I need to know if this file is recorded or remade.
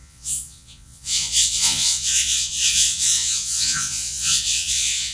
remade